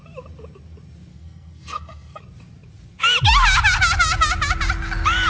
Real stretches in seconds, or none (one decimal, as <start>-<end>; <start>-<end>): 0.0-1.1; 2.2-5.3